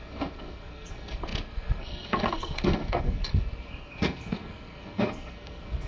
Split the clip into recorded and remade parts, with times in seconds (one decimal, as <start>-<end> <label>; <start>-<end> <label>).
0.0-5.9 remade

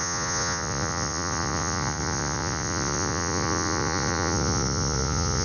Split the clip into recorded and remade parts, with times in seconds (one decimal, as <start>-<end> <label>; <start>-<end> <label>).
0.0-5.4 remade